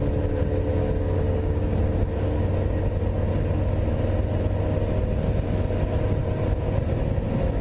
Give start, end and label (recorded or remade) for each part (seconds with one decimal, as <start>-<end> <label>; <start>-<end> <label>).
0.0-0.8 recorded; 0.8-2.5 remade; 2.5-7.6 recorded